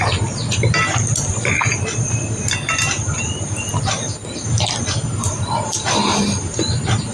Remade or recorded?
recorded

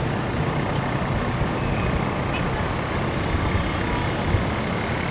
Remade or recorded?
recorded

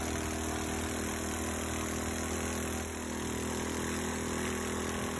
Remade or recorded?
recorded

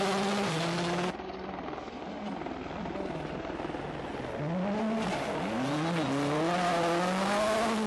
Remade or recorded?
recorded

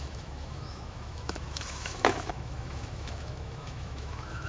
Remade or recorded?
remade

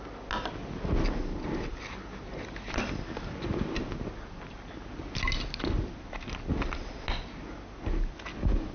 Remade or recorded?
recorded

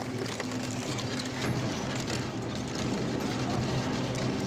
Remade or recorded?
recorded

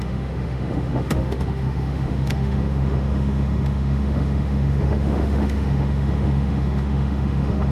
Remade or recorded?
remade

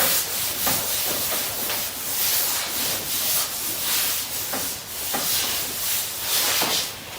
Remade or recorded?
recorded